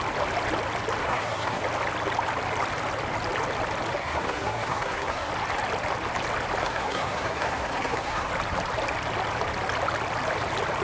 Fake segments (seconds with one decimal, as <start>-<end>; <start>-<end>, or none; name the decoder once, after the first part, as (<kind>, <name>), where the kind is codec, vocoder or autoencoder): 1.0-1.6 (codec, SNAC); 4.0-5.3; 6.6-8.3